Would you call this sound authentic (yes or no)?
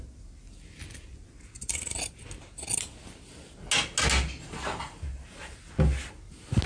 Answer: yes